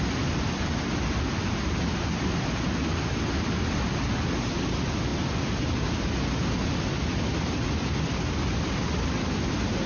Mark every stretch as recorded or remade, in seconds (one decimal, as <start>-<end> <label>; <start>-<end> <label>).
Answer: 0.0-9.9 recorded